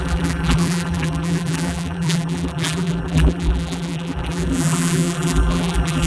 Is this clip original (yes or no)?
no